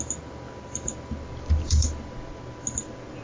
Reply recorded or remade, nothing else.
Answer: recorded